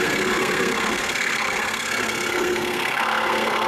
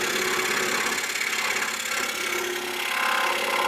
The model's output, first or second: first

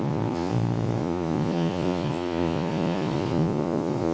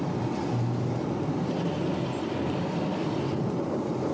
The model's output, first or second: first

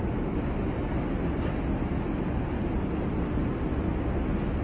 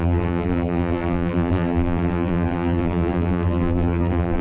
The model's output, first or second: second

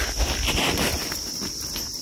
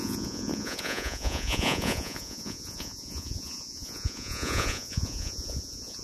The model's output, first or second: second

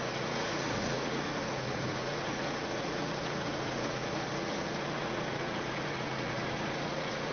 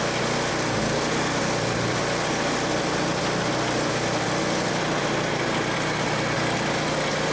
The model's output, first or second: first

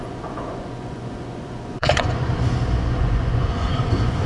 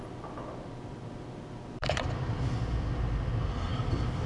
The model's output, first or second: first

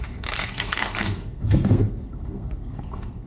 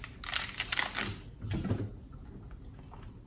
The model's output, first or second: first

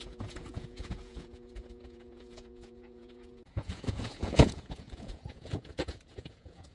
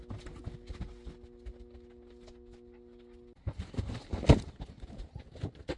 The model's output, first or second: first